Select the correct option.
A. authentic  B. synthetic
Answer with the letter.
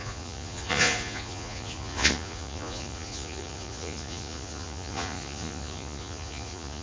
B